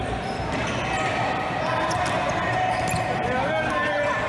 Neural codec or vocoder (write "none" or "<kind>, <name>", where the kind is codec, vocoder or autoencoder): none